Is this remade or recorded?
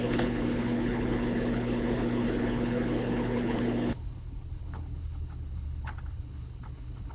remade